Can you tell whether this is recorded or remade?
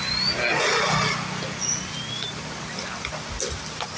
recorded